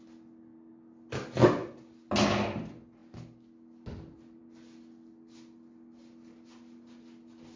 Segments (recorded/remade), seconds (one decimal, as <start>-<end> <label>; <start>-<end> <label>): 0.0-7.6 recorded